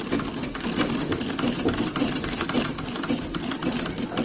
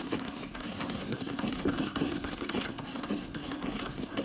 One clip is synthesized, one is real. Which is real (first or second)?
first